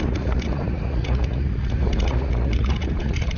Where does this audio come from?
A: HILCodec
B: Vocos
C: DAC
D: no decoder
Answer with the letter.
B